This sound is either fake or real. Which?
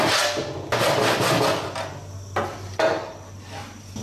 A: real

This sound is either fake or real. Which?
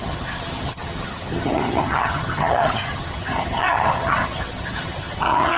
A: fake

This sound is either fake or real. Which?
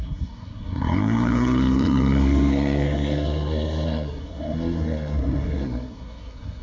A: fake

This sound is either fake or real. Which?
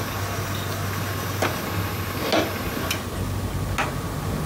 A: real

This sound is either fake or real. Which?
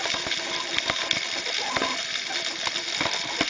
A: real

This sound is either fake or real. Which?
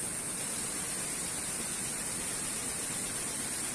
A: real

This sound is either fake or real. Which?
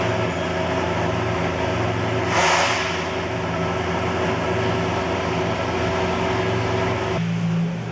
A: real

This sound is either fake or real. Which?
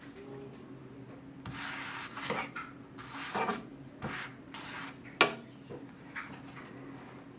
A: real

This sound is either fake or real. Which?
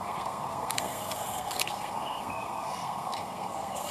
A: fake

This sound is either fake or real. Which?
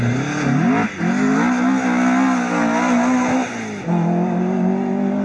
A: real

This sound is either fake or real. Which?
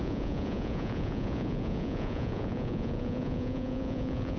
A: fake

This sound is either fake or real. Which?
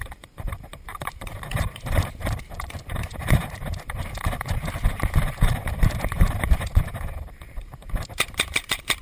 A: fake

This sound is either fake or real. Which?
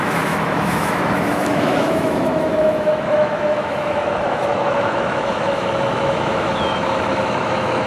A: fake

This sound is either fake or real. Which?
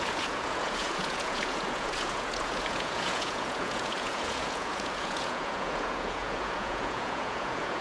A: fake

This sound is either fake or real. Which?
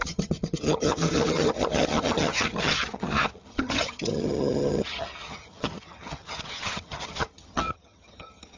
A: fake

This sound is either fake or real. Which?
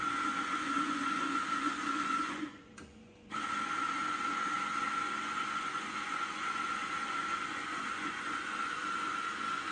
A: fake